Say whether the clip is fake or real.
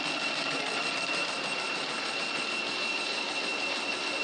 real